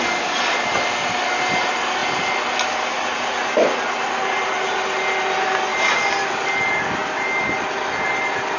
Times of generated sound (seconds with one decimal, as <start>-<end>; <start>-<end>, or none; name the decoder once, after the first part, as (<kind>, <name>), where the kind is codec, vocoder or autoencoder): none